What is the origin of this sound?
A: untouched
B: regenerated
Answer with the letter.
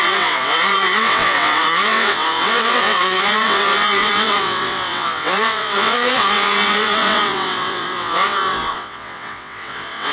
B